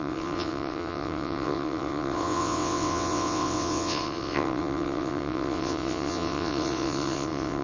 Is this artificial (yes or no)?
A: yes